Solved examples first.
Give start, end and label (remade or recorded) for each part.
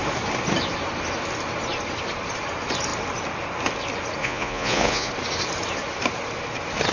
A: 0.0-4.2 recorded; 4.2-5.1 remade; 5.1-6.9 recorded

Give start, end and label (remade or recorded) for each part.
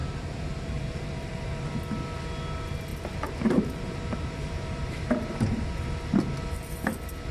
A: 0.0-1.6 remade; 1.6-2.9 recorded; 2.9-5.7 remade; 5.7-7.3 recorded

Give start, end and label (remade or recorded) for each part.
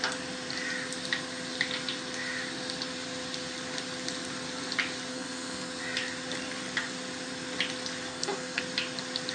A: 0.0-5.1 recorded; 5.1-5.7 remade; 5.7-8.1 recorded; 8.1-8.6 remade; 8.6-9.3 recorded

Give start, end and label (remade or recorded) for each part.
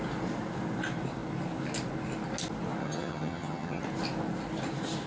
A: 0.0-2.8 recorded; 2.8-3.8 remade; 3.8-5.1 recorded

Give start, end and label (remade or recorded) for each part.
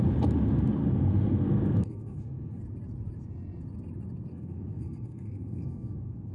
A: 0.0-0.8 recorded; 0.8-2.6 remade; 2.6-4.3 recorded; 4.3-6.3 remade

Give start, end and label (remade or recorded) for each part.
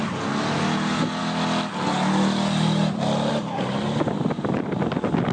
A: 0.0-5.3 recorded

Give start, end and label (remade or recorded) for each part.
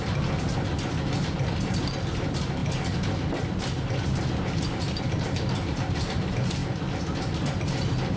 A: 0.0-8.2 recorded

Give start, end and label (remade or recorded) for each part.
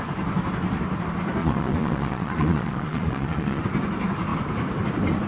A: 0.0-1.4 recorded; 1.4-3.6 remade; 3.6-5.3 recorded